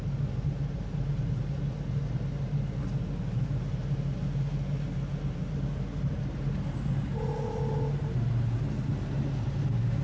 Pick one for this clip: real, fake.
real